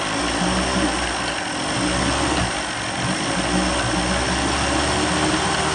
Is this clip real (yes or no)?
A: yes